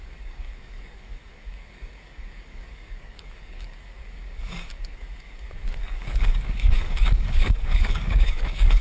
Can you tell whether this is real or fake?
fake